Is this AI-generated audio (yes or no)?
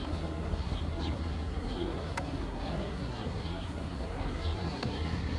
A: yes